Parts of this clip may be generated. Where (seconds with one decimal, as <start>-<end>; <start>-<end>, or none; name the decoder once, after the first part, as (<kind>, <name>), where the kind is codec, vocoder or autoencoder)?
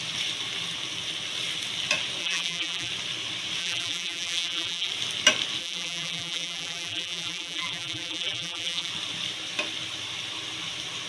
2.2-2.9 (vocoder, BigVGAN v2); 3.6-4.9; 5.6-8.9